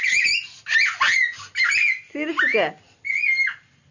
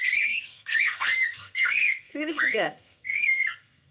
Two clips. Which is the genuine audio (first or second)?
first